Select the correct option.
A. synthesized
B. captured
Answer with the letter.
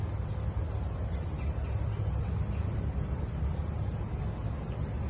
B